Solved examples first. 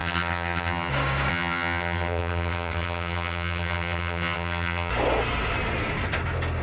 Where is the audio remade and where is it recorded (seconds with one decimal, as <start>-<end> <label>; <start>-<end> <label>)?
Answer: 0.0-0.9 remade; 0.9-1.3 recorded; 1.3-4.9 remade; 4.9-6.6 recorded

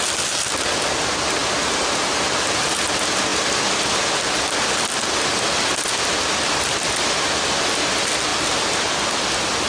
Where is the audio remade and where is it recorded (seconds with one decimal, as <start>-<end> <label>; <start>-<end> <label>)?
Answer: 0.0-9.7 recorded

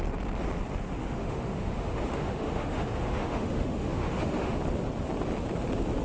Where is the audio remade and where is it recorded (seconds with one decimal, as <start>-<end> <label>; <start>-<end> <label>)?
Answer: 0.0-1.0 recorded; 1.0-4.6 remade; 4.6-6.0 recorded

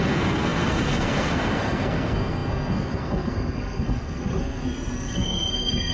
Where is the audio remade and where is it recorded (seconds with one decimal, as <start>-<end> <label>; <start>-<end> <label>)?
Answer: 0.0-5.9 remade